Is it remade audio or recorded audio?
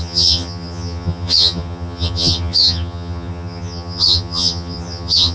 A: remade